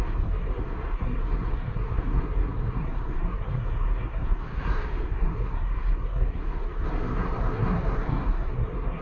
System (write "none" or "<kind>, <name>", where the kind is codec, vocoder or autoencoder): codec, SNAC